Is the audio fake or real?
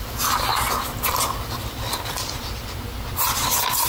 real